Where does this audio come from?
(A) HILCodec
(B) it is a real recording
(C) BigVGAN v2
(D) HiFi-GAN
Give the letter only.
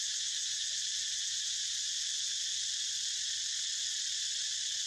B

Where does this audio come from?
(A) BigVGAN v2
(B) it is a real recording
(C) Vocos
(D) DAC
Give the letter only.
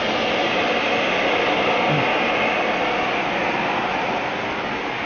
B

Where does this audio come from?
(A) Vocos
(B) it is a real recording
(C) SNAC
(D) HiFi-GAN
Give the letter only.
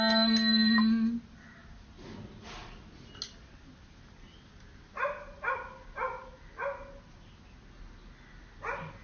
B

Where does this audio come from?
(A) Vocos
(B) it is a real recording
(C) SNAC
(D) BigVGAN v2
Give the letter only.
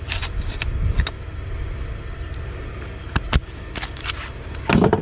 B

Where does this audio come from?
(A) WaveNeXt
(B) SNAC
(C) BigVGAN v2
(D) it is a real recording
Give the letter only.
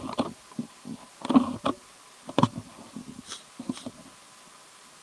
D